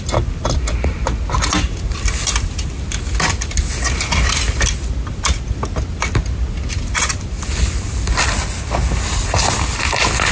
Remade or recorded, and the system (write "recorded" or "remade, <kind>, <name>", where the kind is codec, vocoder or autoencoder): recorded